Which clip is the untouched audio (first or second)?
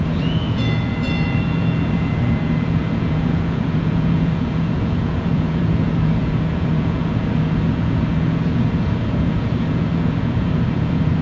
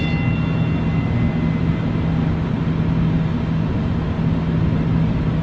second